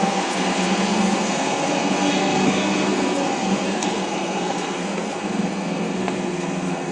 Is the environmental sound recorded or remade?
remade